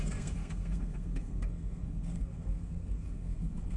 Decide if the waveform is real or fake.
fake